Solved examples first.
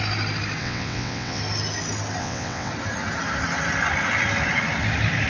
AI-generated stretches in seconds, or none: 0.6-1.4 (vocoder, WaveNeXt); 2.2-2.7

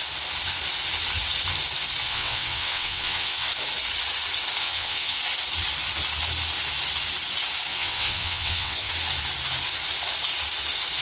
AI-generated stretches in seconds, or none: 2.0-3.5 (vocoder, WaveNeXt); 4.6-5.2; 7.7-8.9